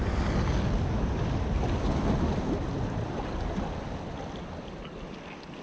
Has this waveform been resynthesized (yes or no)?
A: no